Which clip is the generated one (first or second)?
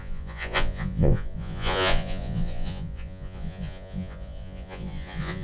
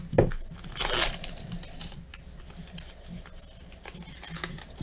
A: first